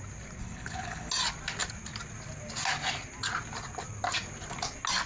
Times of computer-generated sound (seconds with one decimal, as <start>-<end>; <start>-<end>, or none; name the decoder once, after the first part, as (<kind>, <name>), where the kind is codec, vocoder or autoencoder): 0.4-1.1 (codec, HILCodec)